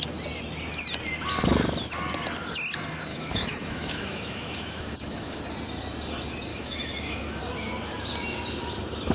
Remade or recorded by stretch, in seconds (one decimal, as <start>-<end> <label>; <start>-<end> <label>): 0.0-3.1 recorded; 3.1-5.4 remade; 5.4-6.5 recorded; 6.5-7.4 remade; 7.4-9.1 recorded